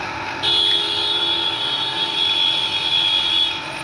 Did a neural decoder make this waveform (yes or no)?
no